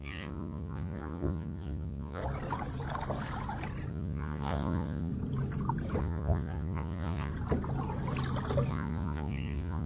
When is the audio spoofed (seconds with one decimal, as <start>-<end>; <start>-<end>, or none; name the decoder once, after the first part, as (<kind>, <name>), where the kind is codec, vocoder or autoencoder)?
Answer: 0.0-2.2 (vocoder, Vocos); 3.9-5.1; 6.0-7.3; 8.7-9.9